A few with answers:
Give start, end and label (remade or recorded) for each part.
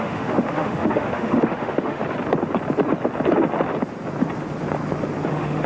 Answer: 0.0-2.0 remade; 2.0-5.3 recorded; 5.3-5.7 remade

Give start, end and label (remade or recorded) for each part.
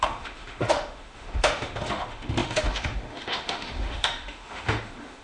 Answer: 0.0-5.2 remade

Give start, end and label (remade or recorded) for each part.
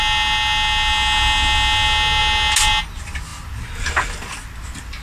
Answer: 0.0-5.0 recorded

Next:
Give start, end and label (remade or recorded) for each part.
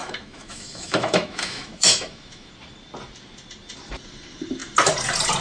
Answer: 0.0-2.5 remade; 2.5-5.4 recorded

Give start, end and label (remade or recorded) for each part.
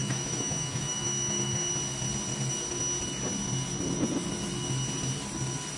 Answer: 0.0-1.7 remade; 1.7-5.8 recorded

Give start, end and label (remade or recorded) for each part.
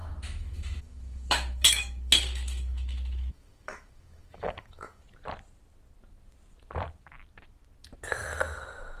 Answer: 0.0-5.0 remade; 5.0-9.0 recorded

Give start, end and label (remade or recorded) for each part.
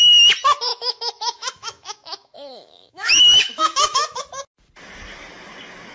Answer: 0.0-0.7 recorded; 0.7-4.2 remade; 4.2-5.9 recorded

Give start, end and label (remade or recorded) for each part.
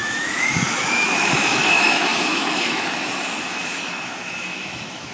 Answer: 0.0-5.1 remade